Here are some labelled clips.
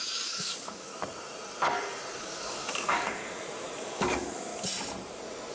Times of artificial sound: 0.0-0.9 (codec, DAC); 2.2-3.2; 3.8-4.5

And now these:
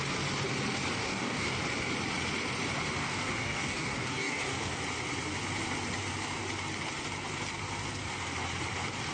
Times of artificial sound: 1.0-1.6 (codec, DAC); 3.0-4.8

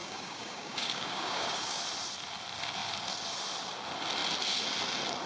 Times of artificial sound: 0.0-1.8 (codec, DAC)

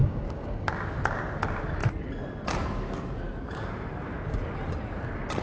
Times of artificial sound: 0.0-0.7 (codec, DAC)